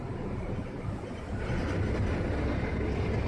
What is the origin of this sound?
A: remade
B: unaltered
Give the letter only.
B